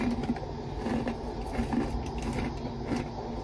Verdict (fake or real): real